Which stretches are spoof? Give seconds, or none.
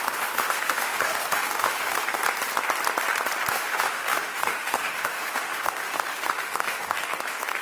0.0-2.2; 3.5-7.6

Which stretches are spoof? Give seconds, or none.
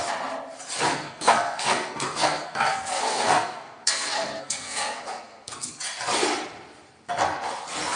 0.9-5.7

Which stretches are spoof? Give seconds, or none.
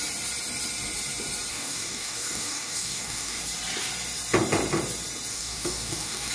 1.5-3.4; 5.3-6.3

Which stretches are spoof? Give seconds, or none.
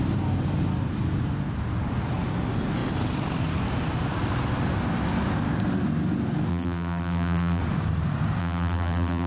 6.5-7.6; 8.4-9.3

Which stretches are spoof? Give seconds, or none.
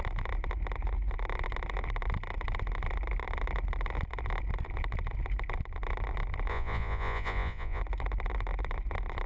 6.5-7.8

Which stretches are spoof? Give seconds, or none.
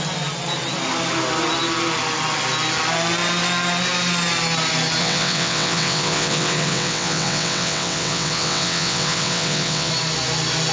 5.0-9.9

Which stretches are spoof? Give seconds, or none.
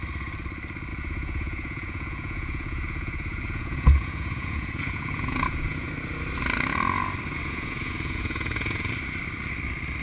0.9-5.9; 7.4-8.9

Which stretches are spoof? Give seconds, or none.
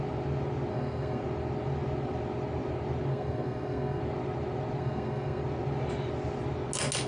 0.7-1.2; 3.1-4.0; 4.8-5.4